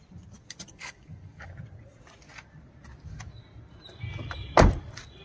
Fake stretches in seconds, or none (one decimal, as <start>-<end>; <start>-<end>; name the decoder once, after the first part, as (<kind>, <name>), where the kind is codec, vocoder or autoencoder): 0.7-1.5 (codec, DAC)